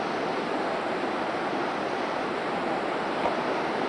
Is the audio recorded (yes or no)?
yes